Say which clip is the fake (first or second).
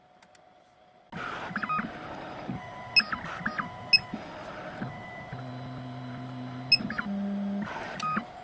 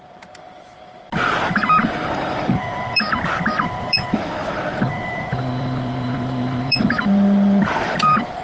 second